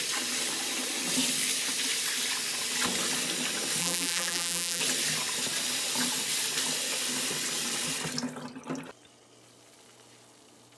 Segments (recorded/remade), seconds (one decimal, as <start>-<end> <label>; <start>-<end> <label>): 0.0-3.8 recorded; 3.8-4.8 remade; 4.8-10.8 recorded